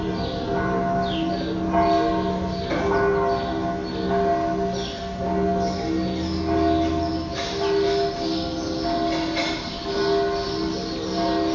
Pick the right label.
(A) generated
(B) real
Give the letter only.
B